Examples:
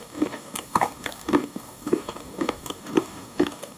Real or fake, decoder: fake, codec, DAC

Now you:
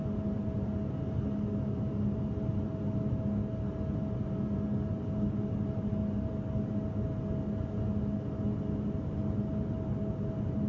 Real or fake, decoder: real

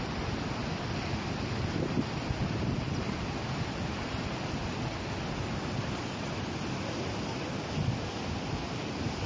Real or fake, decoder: real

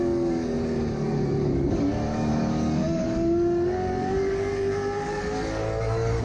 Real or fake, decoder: fake, codec, DAC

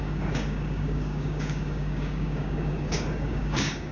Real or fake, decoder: fake, codec, DAC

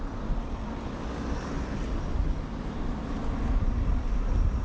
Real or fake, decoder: real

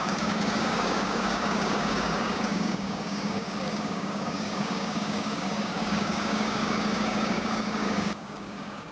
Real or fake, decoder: fake, codec, DAC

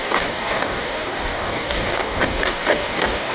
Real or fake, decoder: fake, codec, DAC